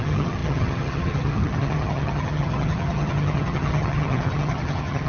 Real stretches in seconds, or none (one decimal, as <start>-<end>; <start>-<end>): none